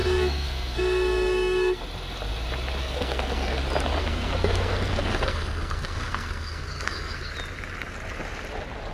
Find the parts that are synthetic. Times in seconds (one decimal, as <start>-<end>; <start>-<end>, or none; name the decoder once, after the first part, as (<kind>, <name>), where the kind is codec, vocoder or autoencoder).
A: 0.0-1.8 (codec, SNAC); 2.8-3.6; 4.0-7.3